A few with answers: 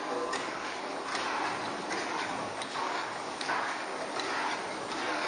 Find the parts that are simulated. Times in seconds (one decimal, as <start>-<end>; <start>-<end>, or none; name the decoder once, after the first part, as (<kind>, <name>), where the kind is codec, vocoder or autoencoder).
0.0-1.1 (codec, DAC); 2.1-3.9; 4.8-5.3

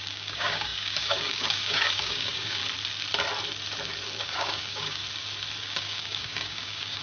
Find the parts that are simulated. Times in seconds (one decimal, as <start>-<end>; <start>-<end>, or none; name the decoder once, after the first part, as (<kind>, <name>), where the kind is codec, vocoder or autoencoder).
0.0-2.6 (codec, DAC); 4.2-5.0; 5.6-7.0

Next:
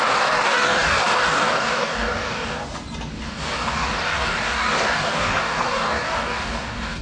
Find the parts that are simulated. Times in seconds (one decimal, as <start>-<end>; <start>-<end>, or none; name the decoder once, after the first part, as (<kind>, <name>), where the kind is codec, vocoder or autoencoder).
0.0-2.6 (codec, DAC); 3.3-7.0

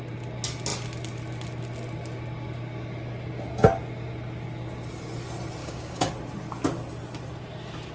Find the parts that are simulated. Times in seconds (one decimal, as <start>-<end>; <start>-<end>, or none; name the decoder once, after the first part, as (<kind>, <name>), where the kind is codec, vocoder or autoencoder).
5.6-6.1 (codec, DAC)

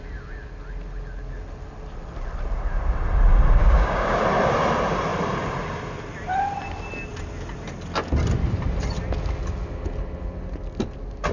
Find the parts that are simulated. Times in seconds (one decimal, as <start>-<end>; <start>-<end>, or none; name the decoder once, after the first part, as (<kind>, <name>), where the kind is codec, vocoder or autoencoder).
3.6-4.2 (codec, DAC)

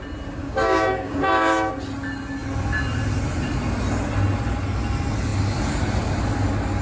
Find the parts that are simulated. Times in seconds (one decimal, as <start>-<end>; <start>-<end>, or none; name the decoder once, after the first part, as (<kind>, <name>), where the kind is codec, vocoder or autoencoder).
0.4-1.7 (codec, DAC)

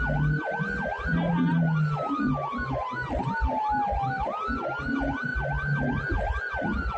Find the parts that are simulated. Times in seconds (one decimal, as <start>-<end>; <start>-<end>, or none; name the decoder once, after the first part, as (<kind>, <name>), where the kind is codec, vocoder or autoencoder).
none